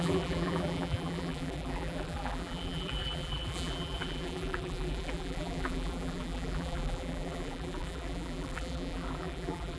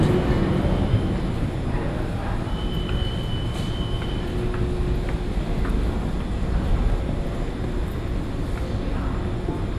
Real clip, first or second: second